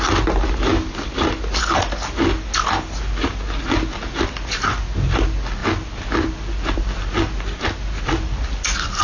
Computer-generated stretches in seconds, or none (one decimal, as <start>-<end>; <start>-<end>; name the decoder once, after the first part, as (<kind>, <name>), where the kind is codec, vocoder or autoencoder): none